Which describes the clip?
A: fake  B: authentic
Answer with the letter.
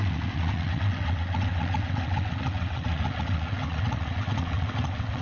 A